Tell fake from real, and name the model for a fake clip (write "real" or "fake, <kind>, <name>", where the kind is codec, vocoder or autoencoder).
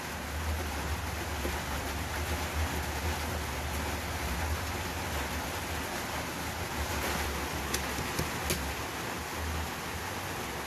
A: real